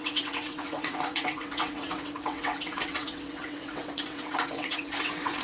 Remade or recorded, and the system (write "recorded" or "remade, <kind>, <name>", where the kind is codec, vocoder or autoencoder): remade, vocoder, WaveNeXt